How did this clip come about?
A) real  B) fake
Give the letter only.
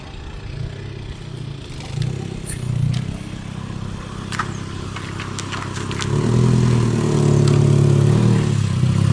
A